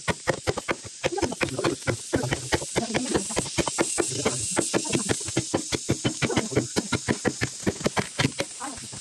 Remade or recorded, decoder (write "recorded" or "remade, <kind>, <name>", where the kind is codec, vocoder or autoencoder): recorded